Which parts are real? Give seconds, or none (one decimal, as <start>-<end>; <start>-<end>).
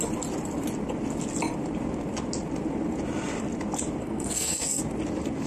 0.0-4.0; 4.8-5.5